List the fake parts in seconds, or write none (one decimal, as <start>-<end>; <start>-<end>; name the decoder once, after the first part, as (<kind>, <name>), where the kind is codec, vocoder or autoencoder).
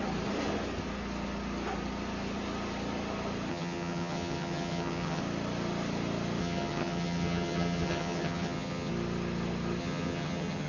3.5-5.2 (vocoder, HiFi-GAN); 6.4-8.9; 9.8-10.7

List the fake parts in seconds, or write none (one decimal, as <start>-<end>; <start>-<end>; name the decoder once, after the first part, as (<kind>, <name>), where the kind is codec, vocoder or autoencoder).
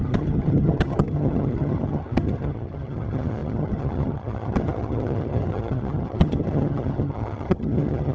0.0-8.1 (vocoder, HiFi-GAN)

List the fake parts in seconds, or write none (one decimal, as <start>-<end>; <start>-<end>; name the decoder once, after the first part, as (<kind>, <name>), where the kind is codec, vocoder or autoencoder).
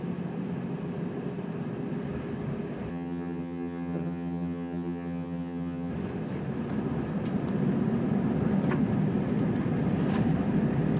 2.9-5.9 (vocoder, HiFi-GAN)